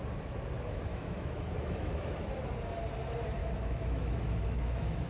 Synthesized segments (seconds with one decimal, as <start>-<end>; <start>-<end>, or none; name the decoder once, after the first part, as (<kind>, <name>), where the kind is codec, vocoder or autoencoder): 0.9-2.3 (autoencoder, DAC-VAE); 3.4-5.1